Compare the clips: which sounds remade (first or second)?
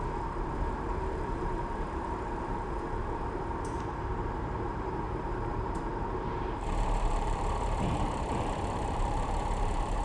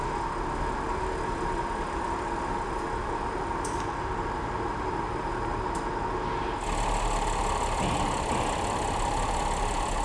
first